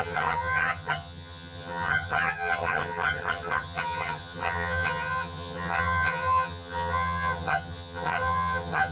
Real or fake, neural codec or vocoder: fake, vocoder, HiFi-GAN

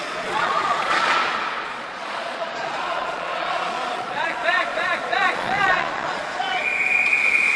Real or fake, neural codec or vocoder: fake, vocoder, Vocos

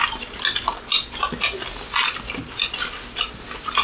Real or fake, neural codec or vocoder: real